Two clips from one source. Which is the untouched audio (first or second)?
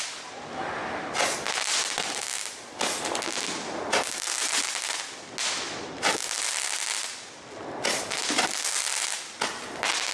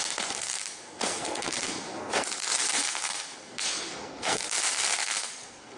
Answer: first